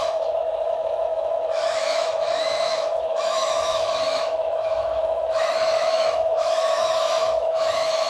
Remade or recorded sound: remade